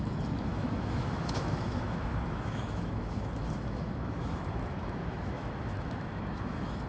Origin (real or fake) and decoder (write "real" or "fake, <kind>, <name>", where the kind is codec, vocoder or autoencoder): fake, autoencoder, DAC-VAE